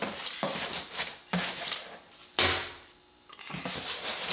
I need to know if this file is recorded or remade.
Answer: recorded